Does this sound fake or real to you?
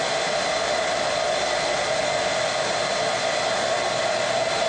real